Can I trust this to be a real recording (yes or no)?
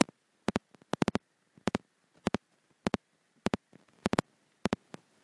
yes